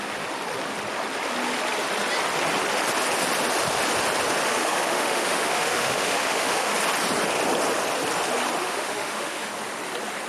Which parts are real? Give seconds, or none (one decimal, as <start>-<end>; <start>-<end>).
0.0-4.6; 6.7-8.6; 9.5-10.3